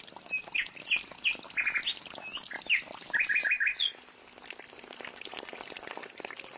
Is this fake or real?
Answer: real